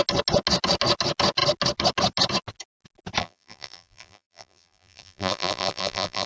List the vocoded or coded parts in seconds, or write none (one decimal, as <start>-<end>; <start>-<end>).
3.2-6.3